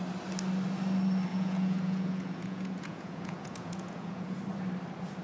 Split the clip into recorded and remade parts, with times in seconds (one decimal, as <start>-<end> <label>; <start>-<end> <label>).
0.0-1.3 recorded; 1.3-4.4 remade; 4.4-5.2 recorded